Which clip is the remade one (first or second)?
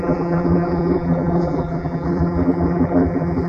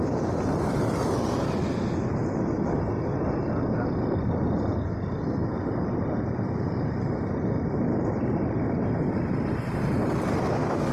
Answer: first